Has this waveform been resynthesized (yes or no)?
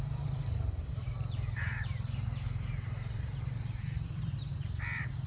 yes